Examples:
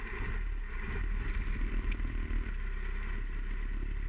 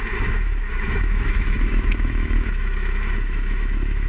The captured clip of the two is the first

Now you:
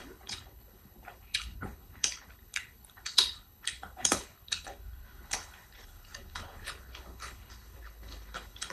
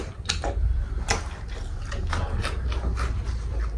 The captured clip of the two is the second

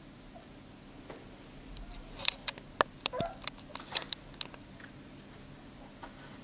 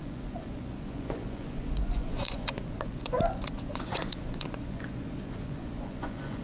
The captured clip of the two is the first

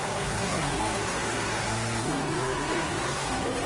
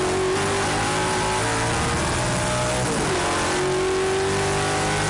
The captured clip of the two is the second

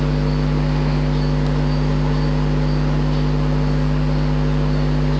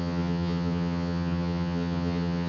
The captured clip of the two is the first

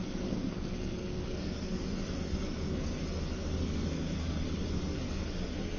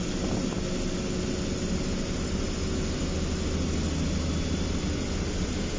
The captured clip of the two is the second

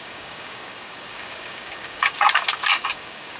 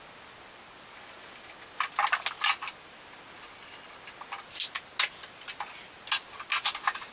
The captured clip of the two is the second